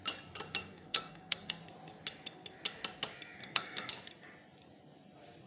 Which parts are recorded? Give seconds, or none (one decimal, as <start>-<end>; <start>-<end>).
0.0-0.6; 1.6-3.4; 3.9-5.5